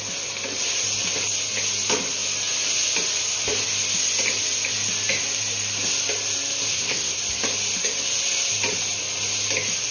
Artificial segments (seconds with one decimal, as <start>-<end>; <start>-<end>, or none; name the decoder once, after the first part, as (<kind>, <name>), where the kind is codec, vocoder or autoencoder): 6.7-7.2 (codec, SNAC)